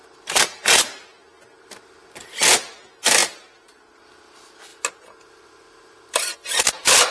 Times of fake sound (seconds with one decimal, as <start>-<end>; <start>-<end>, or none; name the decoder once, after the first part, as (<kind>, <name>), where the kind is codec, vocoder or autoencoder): none